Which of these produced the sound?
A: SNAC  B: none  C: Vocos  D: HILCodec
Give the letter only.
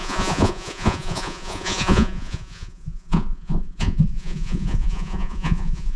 C